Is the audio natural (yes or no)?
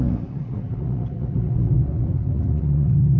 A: no